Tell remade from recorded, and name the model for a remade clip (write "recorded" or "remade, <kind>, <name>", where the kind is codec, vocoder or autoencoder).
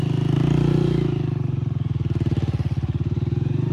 remade, vocoder, BigVGAN v2